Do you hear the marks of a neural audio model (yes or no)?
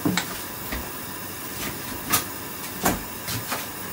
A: no